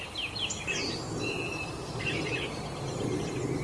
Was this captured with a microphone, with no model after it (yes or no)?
yes